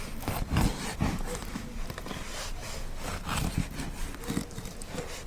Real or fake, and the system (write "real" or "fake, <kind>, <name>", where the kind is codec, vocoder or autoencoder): real